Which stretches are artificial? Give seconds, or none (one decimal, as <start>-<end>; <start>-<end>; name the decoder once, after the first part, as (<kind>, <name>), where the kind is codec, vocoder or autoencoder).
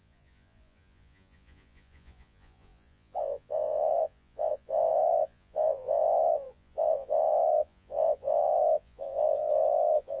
0.0-10.2 (vocoder, Vocos)